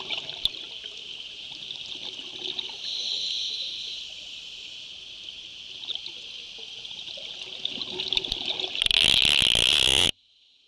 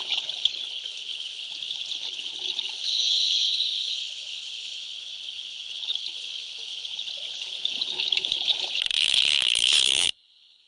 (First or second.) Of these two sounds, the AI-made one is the second